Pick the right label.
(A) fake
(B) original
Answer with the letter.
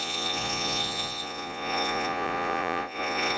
A